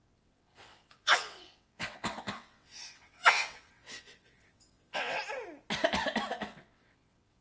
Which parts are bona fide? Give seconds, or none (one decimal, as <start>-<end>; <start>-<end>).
5.2-6.3